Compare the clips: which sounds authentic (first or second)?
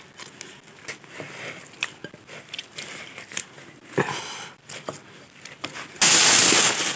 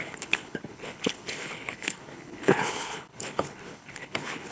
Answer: first